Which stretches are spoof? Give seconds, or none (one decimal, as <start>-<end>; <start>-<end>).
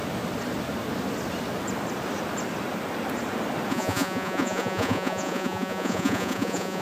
3.7-6.8